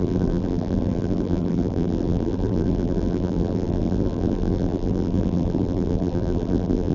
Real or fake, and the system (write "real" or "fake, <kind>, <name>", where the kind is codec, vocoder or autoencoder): fake, vocoder, BigVGAN v2